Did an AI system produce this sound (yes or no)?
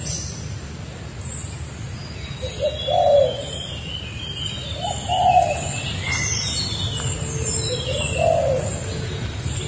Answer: no